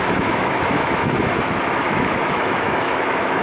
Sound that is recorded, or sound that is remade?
remade